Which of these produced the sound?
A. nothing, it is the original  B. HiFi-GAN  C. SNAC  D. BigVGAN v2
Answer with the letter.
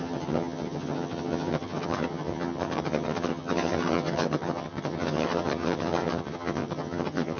B